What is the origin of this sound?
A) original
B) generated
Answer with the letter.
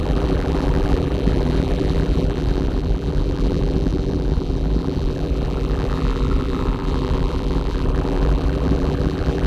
B